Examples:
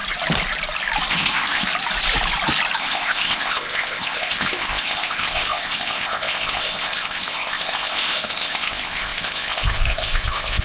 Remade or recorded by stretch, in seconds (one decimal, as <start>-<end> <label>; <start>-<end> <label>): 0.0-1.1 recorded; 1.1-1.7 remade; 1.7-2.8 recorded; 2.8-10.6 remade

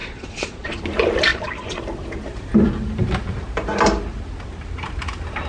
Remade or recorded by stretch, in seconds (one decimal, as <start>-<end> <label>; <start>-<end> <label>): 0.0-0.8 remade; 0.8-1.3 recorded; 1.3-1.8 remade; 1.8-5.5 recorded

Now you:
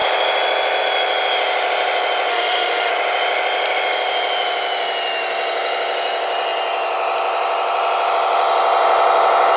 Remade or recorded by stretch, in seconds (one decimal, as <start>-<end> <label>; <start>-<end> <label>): 0.0-2.3 recorded; 2.3-2.9 remade; 2.9-9.6 recorded

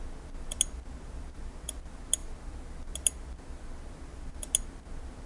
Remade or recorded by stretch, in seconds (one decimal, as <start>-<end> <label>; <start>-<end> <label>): 0.0-5.3 recorded